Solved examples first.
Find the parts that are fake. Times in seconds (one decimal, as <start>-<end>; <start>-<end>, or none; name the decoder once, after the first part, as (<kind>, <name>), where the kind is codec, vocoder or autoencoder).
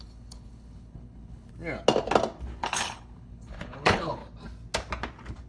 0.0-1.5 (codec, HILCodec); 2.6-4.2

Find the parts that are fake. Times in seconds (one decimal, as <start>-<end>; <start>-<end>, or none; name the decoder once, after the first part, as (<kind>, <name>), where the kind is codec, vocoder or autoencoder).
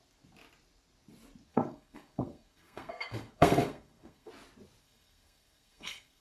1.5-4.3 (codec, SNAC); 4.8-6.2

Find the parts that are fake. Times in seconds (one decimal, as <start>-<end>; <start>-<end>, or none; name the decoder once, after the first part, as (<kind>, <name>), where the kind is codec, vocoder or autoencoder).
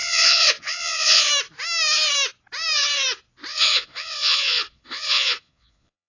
0.0-1.3 (vocoder, Vocos); 3.5-6.1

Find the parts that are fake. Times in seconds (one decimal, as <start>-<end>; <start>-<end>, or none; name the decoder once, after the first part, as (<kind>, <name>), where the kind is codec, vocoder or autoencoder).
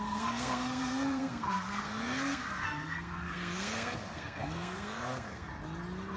0.0-5.5 (codec, SNAC)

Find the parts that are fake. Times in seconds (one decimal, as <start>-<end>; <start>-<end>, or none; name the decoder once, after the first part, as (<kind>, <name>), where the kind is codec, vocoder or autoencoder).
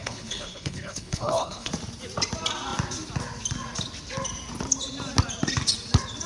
0.0-1.7 (codec, HILCodec)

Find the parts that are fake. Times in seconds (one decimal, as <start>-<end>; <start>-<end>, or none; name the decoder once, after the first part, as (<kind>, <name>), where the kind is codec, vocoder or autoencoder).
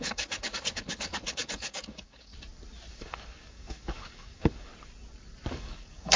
0.0-2.3 (codec, DAC); 2.9-4.7; 5.5-6.2